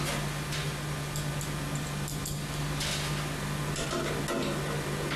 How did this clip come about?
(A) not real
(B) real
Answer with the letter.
B